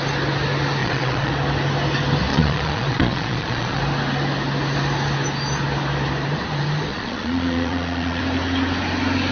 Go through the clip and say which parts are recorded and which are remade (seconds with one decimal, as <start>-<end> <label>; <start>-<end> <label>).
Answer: 0.0-0.8 recorded; 0.8-1.3 remade; 1.3-2.3 recorded; 2.3-3.8 remade; 3.8-6.9 recorded; 6.9-8.2 remade; 8.2-9.3 recorded